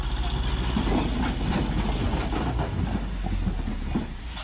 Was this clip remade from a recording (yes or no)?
no